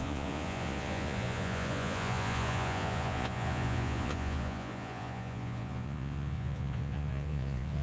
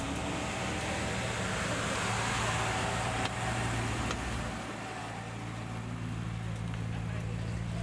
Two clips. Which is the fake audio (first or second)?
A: first